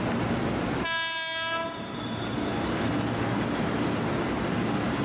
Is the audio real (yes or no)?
yes